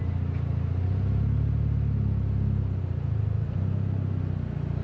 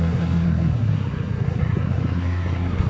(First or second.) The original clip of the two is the first